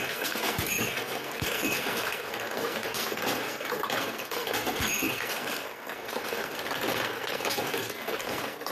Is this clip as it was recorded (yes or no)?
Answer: no